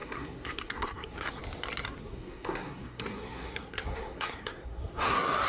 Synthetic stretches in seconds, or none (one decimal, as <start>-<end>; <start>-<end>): 0.0-1.4; 2.0-5.5